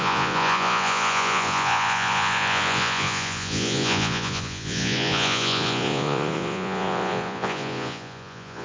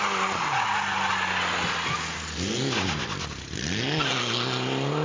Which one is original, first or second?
second